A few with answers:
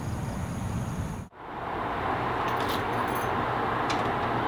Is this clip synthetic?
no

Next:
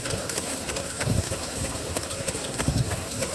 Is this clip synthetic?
yes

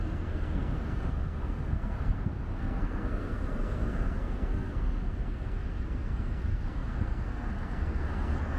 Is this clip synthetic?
yes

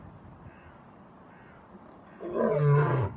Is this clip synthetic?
no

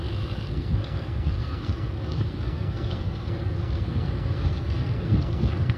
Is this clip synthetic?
yes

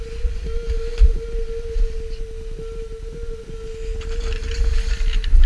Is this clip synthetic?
no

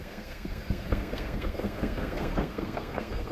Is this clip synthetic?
yes